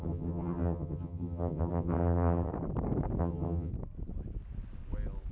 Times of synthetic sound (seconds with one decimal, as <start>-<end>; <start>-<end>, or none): 0.0-2.5; 3.2-3.7